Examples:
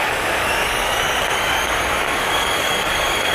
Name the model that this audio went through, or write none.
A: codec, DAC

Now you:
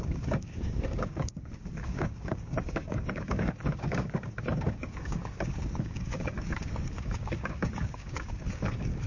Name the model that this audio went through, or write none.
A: codec, DAC